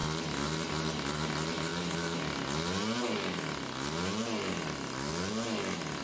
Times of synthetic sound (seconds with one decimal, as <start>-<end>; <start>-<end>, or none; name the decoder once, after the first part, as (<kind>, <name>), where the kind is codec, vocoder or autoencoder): none